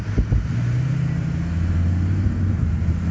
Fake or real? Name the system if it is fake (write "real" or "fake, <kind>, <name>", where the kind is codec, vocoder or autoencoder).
fake, vocoder, BigVGAN v2